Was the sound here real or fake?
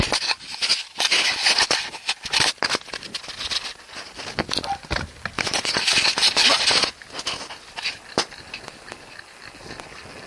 real